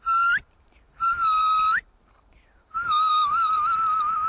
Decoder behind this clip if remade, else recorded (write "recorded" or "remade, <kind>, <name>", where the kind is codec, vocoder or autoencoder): remade, vocoder, BigVGAN v2